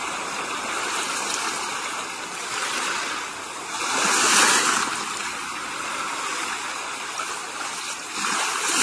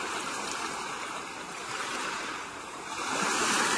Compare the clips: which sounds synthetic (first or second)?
second